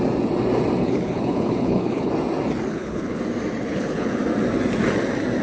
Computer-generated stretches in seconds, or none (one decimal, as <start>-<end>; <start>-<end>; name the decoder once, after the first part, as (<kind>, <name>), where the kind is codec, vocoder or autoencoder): 0.8-2.1 (codec, HILCodec); 2.7-3.2; 3.6-4.2